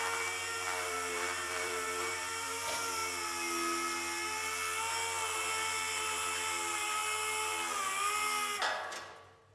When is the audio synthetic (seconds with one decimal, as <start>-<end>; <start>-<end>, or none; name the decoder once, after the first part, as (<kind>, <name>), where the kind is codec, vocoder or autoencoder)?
0.0-3.0 (vocoder, BigVGAN v2); 5.4-7.0